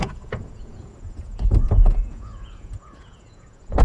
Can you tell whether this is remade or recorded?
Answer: remade